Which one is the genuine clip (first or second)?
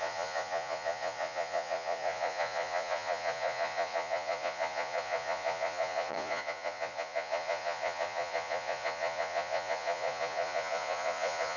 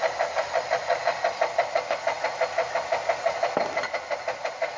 second